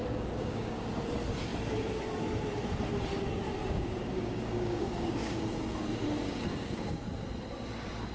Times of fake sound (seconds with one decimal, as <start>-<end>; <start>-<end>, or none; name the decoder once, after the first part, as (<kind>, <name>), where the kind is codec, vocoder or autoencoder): 0.0-0.9 (codec, DAC); 3.6-5.4; 6.2-7.0